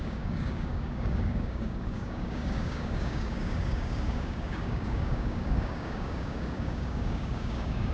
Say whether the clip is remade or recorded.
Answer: remade